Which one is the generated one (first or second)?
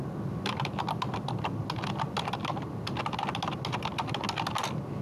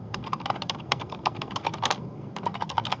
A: second